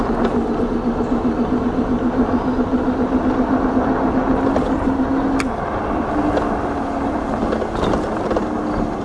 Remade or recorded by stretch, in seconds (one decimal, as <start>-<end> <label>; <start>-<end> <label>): 0.0-9.0 recorded